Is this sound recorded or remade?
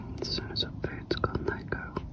recorded